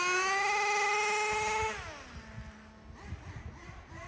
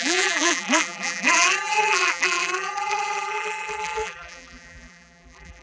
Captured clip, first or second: first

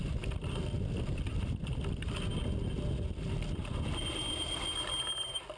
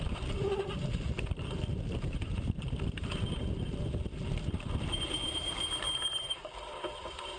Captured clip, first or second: first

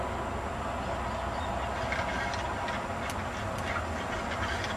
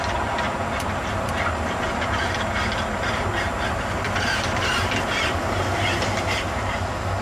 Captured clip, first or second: first